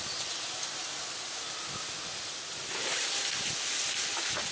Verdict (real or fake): real